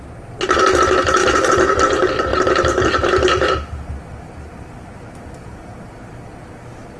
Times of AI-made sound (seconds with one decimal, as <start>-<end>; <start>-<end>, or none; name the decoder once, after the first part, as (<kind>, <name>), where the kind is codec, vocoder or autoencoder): 1.2-1.8 (vocoder, BigVGAN v2); 2.3-6.1